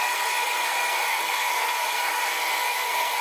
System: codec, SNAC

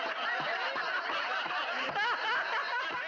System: none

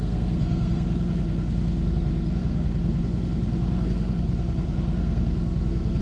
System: codec, SNAC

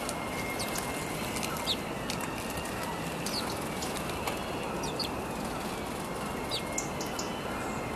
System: none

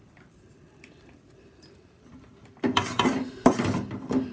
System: none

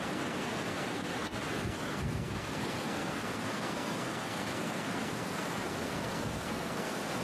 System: codec, SNAC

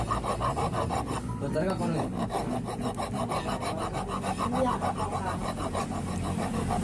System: none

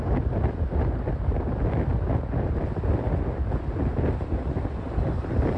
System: none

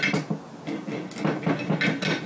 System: none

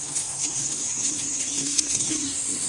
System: codec, SNAC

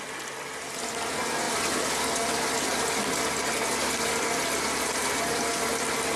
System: none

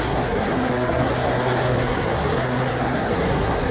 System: codec, SNAC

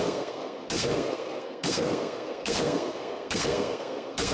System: codec, SNAC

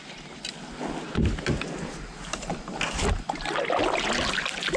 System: none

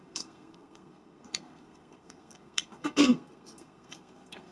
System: codec, SNAC